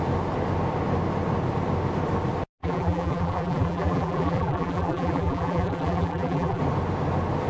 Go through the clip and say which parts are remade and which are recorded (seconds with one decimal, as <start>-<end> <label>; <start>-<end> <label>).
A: 0.0-2.6 recorded; 2.6-6.6 remade; 6.6-7.5 recorded